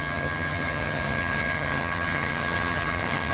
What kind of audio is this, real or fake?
fake